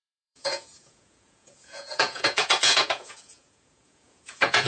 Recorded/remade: remade